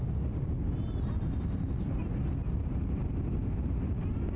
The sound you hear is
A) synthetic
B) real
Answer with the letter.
B